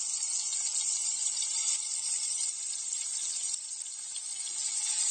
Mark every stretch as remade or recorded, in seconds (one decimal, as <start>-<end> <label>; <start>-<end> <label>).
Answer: 0.0-1.0 recorded; 1.0-4.1 remade; 4.1-5.1 recorded